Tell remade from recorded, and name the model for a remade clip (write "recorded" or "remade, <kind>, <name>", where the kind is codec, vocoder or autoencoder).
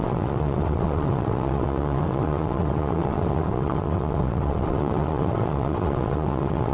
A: remade, vocoder, WaveNeXt